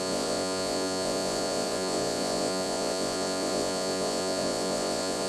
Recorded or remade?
remade